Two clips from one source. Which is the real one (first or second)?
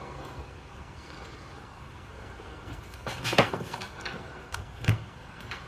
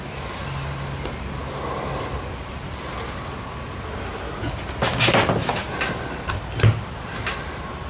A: second